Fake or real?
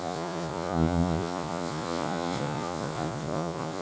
fake